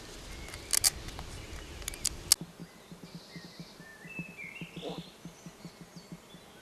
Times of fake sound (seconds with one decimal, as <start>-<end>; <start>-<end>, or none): none